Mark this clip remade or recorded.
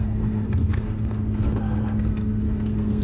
remade